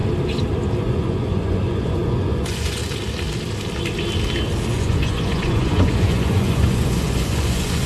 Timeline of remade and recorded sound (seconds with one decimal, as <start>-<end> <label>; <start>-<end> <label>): 0.0-0.8 recorded; 0.8-2.8 remade; 2.8-4.7 recorded; 4.7-7.9 remade